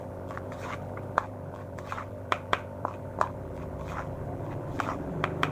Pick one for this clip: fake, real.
fake